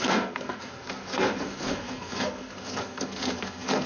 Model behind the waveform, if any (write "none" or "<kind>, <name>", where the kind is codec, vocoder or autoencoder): codec, SNAC